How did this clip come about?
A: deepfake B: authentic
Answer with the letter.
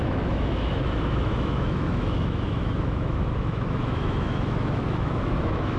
A